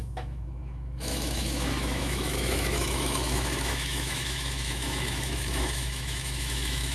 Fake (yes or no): yes